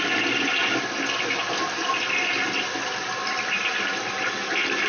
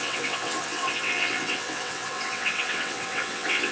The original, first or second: first